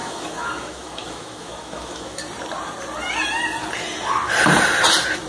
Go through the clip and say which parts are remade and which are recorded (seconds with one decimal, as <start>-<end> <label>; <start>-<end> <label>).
0.0-2.2 remade; 2.2-5.3 recorded

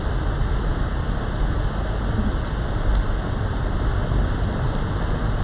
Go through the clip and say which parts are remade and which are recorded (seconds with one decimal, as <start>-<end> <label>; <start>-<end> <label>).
0.0-5.4 recorded

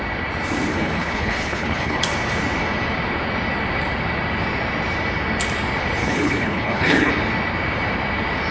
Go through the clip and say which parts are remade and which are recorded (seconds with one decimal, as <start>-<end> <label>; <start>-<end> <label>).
0.0-0.7 recorded; 0.7-2.0 remade; 2.0-6.0 recorded; 6.0-7.1 remade; 7.1-8.5 recorded